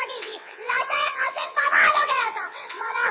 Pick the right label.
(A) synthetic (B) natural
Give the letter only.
A